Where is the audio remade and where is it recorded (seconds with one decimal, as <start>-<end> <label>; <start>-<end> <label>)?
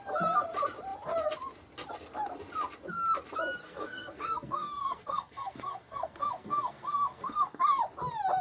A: 0.0-3.6 recorded; 3.6-7.8 remade; 7.8-8.4 recorded